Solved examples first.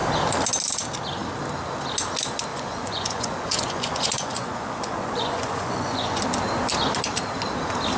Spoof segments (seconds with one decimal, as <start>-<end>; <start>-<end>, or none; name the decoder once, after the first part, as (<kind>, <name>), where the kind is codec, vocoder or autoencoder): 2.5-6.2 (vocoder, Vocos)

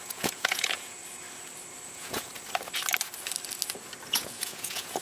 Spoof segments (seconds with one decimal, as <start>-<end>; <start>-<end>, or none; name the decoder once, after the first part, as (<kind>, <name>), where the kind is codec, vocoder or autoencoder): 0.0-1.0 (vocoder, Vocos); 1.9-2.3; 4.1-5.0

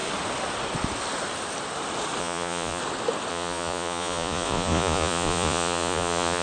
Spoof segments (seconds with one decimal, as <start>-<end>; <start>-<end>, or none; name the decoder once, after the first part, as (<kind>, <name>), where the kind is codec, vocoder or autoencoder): 2.2-2.8 (vocoder, Vocos); 3.3-6.4